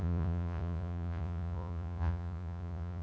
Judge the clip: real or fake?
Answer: fake